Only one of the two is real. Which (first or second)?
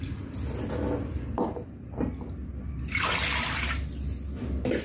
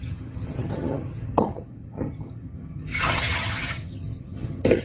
first